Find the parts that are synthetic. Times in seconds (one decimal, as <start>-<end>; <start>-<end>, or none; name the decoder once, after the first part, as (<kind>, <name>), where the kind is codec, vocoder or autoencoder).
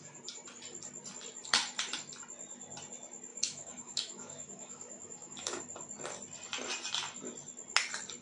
3.3-5.6 (autoencoder, DAC-VAE)